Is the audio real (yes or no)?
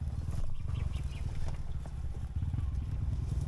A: yes